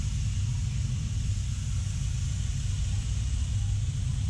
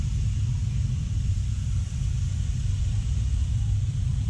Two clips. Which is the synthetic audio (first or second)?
second